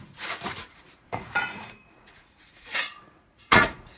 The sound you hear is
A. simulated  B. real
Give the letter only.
A